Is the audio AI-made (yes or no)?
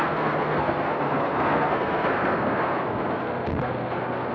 yes